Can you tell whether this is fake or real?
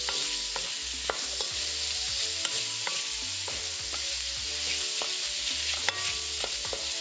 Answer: real